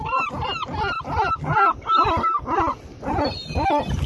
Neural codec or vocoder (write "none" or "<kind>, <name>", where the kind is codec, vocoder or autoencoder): none